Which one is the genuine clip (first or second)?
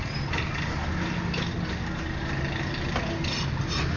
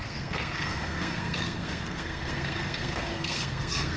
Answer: first